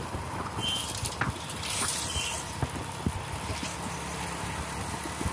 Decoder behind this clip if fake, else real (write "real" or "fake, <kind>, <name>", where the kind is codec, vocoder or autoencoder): real